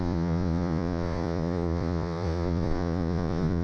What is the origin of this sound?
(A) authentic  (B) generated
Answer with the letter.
B